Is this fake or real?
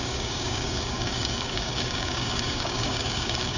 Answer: fake